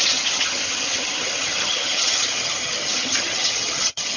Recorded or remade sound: remade